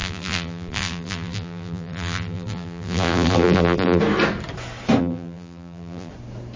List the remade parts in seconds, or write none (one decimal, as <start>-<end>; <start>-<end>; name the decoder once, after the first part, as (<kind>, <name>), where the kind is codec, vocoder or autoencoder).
0.0-4.0 (vocoder, BigVGAN v2); 5.0-6.1